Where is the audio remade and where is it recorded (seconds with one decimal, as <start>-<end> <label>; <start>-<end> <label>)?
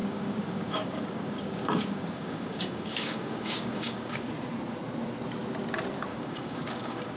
0.0-4.3 remade; 4.3-6.1 recorded; 6.1-7.2 remade